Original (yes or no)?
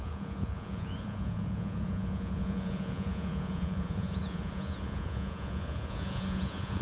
no